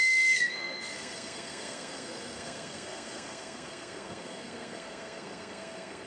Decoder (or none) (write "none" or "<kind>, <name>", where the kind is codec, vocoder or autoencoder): codec, SNAC